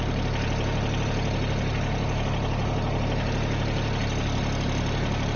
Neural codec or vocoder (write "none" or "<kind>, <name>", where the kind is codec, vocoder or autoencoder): none